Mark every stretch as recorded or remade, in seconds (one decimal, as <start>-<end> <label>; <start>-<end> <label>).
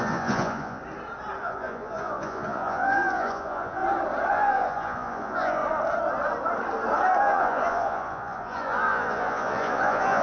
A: 0.0-0.8 remade; 0.8-1.4 recorded; 1.4-3.8 remade; 3.8-4.3 recorded; 4.3-5.6 remade; 5.6-7.2 recorded; 7.2-10.2 remade